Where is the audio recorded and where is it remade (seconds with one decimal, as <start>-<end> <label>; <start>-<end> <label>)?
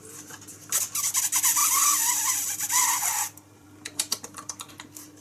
0.0-1.6 recorded; 1.6-4.7 remade; 4.7-5.2 recorded